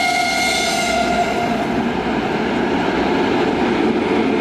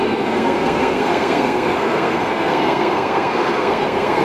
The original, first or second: first